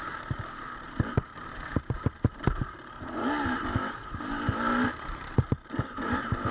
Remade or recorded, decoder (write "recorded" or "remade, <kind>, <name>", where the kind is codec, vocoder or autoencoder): remade, vocoder, BigVGAN v2